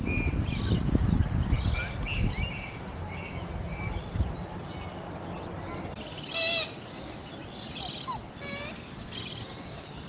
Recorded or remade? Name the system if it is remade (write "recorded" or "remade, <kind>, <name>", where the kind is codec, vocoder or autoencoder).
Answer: recorded